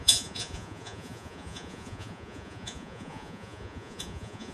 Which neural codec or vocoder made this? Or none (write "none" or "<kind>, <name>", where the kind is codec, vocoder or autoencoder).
vocoder, Vocos